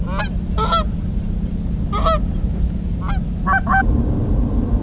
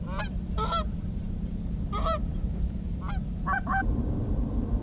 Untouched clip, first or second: first